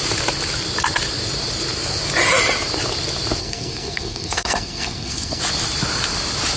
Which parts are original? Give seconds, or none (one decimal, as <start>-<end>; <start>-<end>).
0.0-3.4; 5.4-6.6